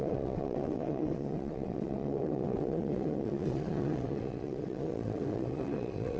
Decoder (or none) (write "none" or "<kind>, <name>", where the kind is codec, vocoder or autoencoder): vocoder, WaveNeXt